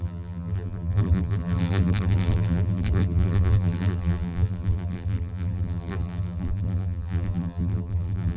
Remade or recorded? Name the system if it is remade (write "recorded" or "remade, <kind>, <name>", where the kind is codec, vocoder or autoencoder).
remade, vocoder, BigVGAN v2